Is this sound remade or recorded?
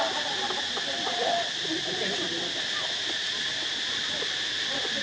recorded